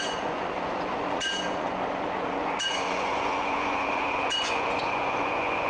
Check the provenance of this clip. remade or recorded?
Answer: remade